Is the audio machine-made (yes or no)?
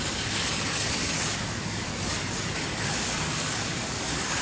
yes